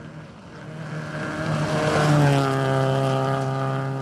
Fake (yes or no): no